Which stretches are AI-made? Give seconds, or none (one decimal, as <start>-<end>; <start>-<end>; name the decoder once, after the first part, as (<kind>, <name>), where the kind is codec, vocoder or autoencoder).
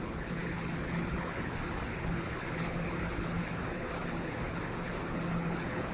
0.0-5.9 (codec, HILCodec)